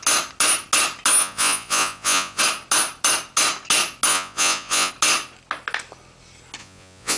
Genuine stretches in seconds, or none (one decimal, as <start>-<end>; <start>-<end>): 0.0-1.2; 2.4-4.1; 4.9-6.6

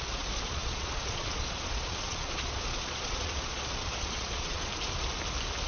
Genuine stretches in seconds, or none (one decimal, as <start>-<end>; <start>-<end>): 4.7-5.7

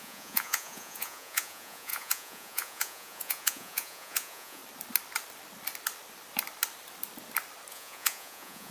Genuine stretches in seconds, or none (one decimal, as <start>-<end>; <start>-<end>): 4.6-7.7

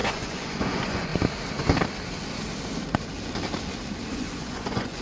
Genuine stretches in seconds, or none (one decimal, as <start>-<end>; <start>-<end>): 1.1-4.1

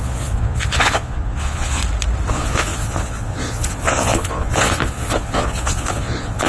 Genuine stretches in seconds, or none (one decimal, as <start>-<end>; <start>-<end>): 1.8-2.3

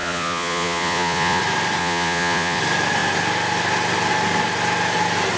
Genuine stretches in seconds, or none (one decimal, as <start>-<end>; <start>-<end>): 1.4-1.8; 2.6-5.4